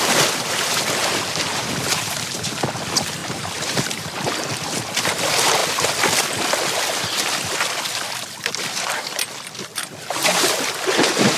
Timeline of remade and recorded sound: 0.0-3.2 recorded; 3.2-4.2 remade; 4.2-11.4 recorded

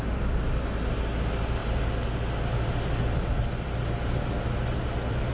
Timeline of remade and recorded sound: 0.0-5.3 recorded

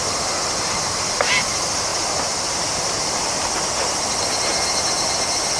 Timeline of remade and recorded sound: 0.0-1.9 recorded; 1.9-3.6 remade; 3.6-5.6 recorded